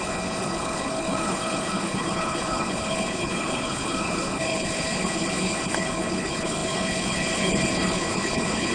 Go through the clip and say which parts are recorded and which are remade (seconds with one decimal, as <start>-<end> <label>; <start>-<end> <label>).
0.0-8.7 remade